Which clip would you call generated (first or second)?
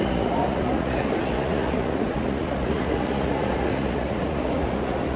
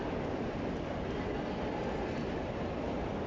first